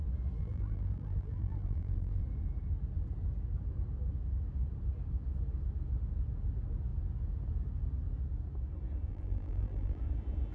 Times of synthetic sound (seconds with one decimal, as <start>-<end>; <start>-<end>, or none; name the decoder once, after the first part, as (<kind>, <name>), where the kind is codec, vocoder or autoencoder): 0.4-2.2 (vocoder, BigVGAN v2); 9.1-10.0